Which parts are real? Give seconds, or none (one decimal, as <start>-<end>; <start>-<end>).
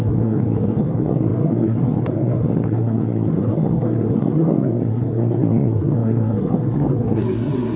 none